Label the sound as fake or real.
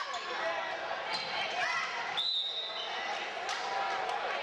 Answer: real